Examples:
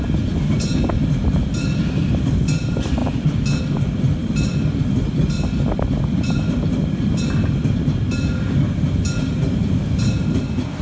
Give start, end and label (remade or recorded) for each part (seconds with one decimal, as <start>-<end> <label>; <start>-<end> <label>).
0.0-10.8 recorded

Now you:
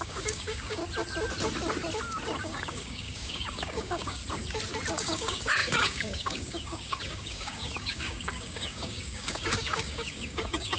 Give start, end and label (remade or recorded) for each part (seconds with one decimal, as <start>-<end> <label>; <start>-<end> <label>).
0.0-0.8 remade; 0.8-2.4 recorded; 2.4-4.2 remade; 4.2-4.9 recorded; 4.9-10.8 remade

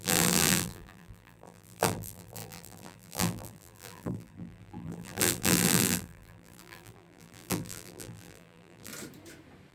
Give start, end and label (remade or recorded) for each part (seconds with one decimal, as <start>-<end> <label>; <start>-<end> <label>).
0.0-8.9 remade; 8.9-9.7 recorded